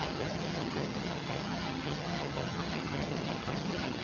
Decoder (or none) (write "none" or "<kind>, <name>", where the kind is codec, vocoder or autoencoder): vocoder, HiFi-GAN